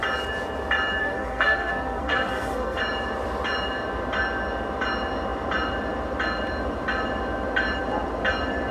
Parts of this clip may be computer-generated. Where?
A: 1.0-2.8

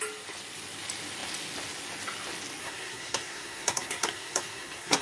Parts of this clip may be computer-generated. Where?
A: 2.6-5.0